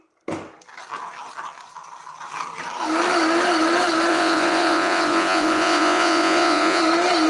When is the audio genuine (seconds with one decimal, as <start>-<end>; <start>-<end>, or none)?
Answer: 0.0-4.1; 6.8-7.3